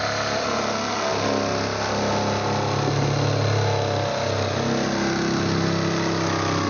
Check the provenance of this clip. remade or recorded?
recorded